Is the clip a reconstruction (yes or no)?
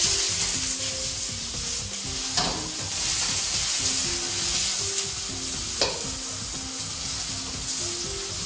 no